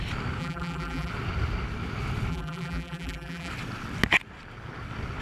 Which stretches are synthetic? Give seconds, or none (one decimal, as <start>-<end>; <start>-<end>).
0.4-1.1; 2.3-3.5